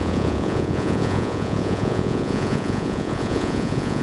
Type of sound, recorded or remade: remade